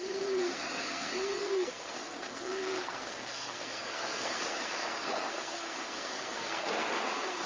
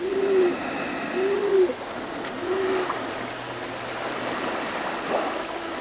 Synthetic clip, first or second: first